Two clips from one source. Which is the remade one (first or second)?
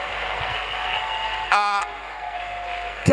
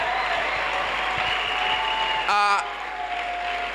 first